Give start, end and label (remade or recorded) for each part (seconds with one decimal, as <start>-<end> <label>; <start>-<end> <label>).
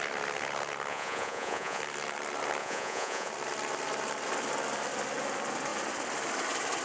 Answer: 0.0-0.9 recorded; 0.9-1.8 remade; 1.8-2.6 recorded; 2.6-3.3 remade; 3.3-6.8 recorded